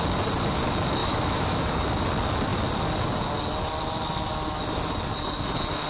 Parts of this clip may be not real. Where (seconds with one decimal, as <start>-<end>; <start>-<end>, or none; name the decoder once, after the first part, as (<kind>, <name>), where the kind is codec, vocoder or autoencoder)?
1.0-1.9 (autoencoder, DAC-VAE)